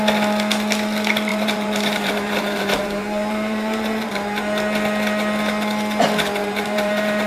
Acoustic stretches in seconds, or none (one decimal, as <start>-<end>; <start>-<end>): 0.0-1.3; 4.4-6.4